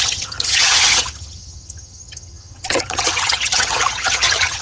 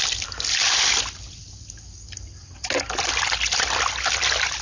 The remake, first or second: first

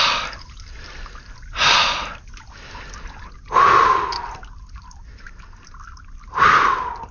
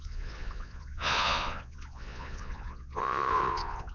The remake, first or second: second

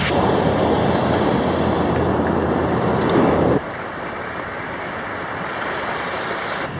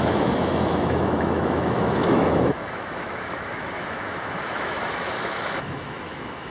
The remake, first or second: second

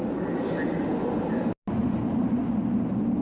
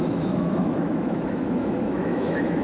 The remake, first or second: second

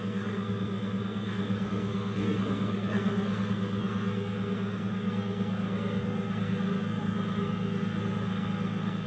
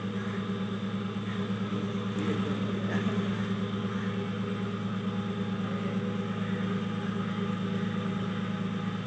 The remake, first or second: first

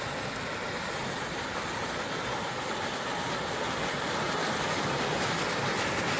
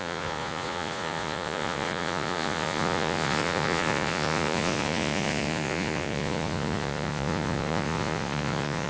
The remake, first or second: second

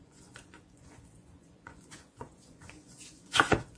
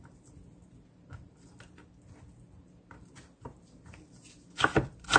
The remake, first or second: first